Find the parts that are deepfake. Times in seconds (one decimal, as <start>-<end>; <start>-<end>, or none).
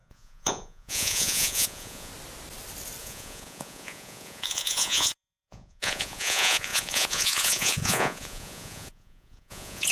0.0-2.1; 3.0-9.9